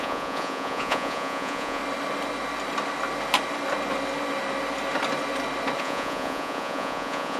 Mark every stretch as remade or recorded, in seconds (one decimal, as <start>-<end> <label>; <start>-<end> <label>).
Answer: 0.0-1.8 remade; 1.8-5.8 recorded; 5.8-7.4 remade